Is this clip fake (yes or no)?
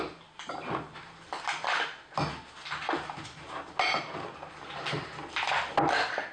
no